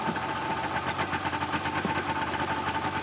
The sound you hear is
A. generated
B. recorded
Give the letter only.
B